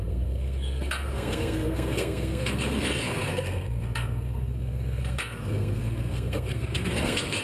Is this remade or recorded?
remade